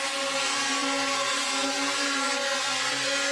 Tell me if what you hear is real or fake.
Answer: real